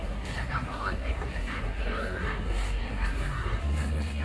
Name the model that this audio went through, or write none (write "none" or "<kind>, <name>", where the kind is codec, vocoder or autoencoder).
codec, SNAC